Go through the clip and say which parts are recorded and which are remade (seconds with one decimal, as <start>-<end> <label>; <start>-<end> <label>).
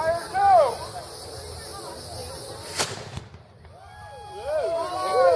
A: 0.0-2.2 recorded; 2.2-3.7 remade; 3.7-5.4 recorded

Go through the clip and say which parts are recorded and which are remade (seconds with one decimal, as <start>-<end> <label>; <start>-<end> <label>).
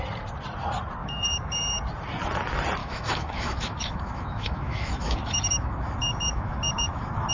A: 0.0-1.0 recorded; 1.0-1.7 remade; 1.7-2.8 recorded; 2.8-7.3 remade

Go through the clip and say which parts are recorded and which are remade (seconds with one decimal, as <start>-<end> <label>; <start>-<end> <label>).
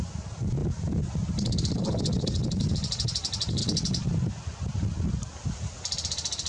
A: 0.0-6.5 recorded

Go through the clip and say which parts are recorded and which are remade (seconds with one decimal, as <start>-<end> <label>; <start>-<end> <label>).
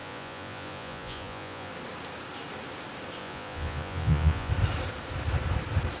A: 0.0-1.7 remade; 1.7-3.2 recorded; 3.2-4.5 remade; 4.5-6.0 recorded